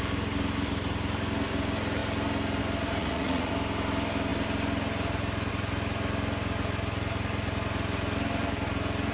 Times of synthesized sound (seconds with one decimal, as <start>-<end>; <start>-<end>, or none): 3.0-3.5